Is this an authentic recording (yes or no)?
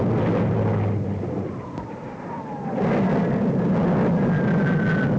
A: yes